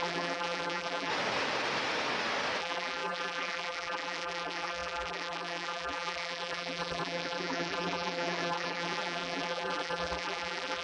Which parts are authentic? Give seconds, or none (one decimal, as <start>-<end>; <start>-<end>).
1.1-2.6